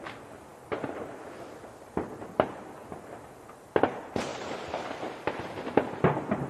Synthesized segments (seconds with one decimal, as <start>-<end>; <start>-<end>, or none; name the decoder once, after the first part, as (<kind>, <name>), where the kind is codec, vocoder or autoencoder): 4.3-5.3 (vocoder, BigVGAN v2)